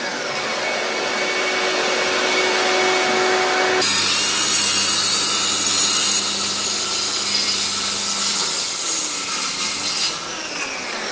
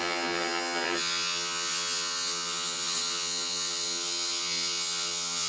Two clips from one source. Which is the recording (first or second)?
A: first